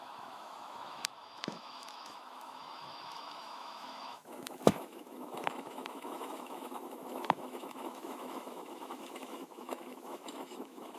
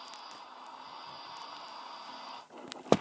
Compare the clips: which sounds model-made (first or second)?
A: first